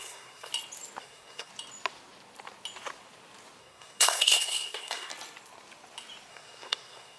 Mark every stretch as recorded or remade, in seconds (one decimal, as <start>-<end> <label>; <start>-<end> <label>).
0.0-0.5 remade; 0.5-1.0 recorded; 1.0-1.5 remade; 1.5-3.6 recorded; 3.6-5.1 remade; 5.1-6.3 recorded; 6.3-7.2 remade